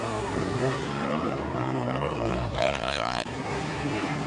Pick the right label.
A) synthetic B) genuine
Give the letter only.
A